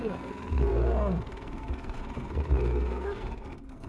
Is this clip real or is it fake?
fake